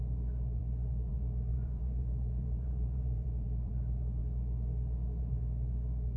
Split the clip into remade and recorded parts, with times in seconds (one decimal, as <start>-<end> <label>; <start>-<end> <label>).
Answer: 0.0-1.5 recorded; 1.5-3.7 remade; 3.7-6.2 recorded

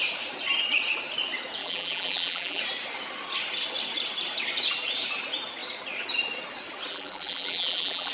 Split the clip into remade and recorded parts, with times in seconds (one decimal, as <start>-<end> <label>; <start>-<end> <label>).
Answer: 0.0-1.6 recorded; 1.6-2.6 remade; 2.6-6.9 recorded; 6.9-8.1 remade

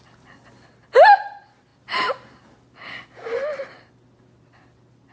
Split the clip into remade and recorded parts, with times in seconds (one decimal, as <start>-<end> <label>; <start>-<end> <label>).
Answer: 0.0-5.1 recorded

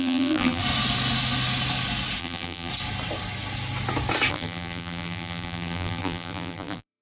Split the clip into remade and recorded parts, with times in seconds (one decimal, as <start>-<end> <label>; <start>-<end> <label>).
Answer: 0.0-0.6 remade; 0.6-2.2 recorded; 2.2-2.7 remade; 2.7-4.3 recorded; 4.3-7.0 remade

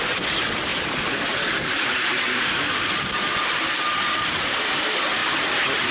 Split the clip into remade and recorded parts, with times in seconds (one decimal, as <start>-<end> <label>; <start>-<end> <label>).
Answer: 0.0-3.3 remade; 3.3-3.8 recorded; 3.8-5.9 remade

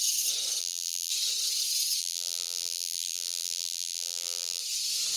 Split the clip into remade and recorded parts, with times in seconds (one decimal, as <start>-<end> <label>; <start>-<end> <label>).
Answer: 0.0-0.6 recorded; 0.6-1.1 remade; 1.1-2.0 recorded; 2.0-4.6 remade; 4.6-5.2 recorded

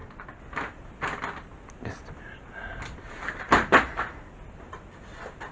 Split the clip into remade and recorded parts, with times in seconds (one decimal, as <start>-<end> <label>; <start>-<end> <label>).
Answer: 0.0-5.5 recorded

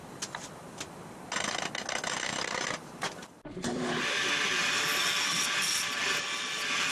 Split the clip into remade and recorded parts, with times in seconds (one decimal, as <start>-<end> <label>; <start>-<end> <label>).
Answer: 0.0-1.3 remade; 1.3-2.3 recorded; 2.3-4.3 remade; 4.3-6.9 recorded